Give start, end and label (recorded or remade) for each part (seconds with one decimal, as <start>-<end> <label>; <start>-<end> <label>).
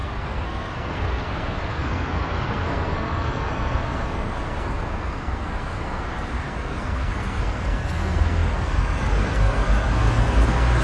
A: 0.0-10.8 remade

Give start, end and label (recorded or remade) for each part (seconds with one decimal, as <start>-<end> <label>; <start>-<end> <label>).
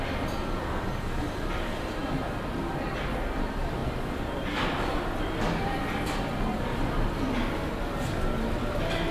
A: 0.0-9.1 recorded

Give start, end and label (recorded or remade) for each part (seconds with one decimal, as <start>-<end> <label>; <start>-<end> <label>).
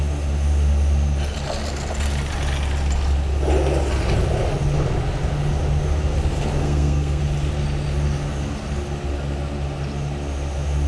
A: 0.0-6.6 recorded; 6.6-7.2 remade; 7.2-10.9 recorded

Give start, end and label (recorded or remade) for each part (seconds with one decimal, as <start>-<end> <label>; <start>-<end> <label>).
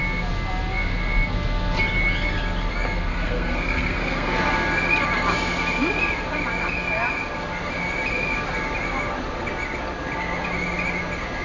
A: 0.0-3.1 recorded; 3.1-4.4 remade; 4.4-11.4 recorded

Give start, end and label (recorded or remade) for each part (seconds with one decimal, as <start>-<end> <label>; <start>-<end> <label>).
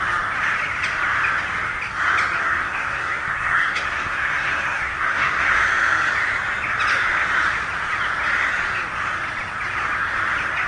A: 0.0-2.4 recorded; 2.4-5.5 remade; 5.5-10.7 recorded